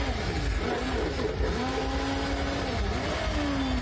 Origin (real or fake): real